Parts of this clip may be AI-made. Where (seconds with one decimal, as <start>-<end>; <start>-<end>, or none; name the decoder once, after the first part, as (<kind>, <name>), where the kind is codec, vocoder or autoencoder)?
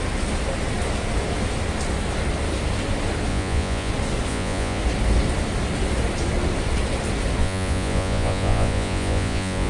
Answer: 3.3-3.9 (vocoder, Vocos); 4.3-4.8; 7.4-9.7